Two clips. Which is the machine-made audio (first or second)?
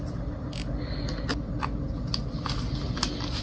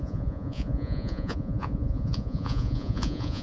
second